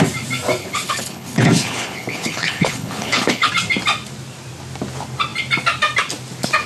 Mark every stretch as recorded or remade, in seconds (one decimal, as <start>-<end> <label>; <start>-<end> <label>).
0.0-0.6 recorded; 0.6-3.5 remade; 3.5-6.7 recorded